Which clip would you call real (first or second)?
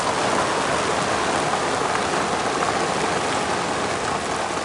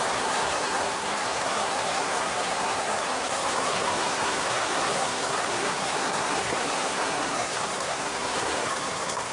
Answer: first